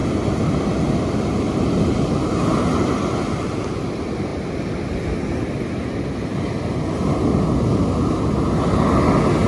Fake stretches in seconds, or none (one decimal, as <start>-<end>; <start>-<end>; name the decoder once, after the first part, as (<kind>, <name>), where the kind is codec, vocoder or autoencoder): none